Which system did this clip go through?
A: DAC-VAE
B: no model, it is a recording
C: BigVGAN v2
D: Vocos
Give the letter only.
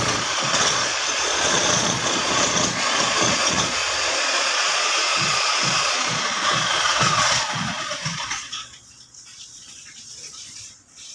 D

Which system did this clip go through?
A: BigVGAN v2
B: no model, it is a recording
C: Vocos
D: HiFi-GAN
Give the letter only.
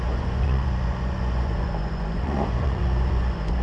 C